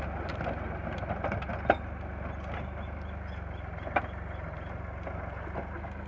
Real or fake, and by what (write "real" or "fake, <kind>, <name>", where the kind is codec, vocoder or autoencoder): real